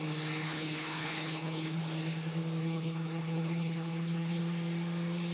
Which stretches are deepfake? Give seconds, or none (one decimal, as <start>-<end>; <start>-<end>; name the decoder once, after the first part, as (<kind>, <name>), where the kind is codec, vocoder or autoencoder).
0.4-1.8 (codec, HILCodec); 2.6-4.4